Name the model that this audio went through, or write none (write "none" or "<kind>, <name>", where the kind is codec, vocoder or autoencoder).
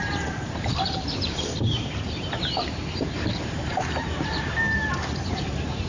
vocoder, BigVGAN v2